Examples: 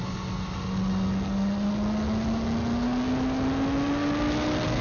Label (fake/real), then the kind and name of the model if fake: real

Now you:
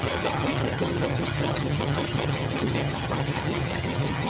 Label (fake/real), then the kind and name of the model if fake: fake, vocoder, HiFi-GAN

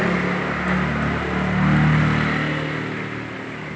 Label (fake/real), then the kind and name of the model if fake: real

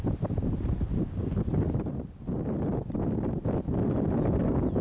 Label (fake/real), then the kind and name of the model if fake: real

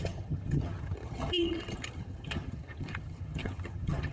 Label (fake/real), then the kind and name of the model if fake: fake, vocoder, HiFi-GAN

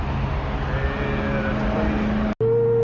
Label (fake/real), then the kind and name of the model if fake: real